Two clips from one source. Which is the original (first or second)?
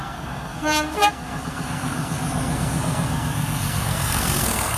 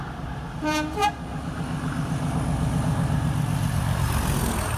second